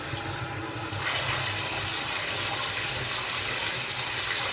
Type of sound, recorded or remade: recorded